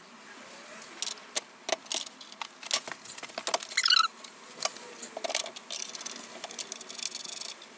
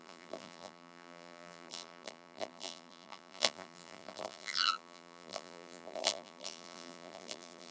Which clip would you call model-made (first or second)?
second